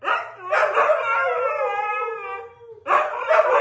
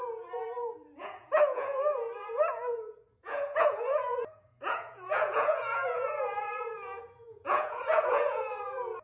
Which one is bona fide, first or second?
first